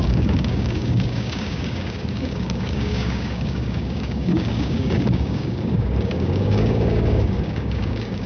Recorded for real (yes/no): no